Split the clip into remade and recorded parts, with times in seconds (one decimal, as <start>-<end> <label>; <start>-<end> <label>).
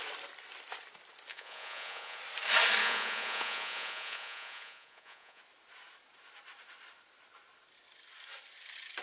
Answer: 0.0-1.3 recorded; 1.3-2.2 remade; 2.2-2.8 recorded; 2.8-5.4 remade; 5.4-9.0 recorded